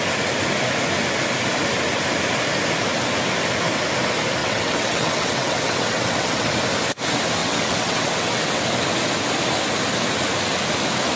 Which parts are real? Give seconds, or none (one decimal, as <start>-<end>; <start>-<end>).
0.0-4.4; 6.5-7.4; 8.6-11.2